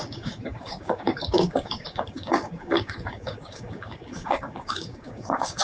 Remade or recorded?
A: remade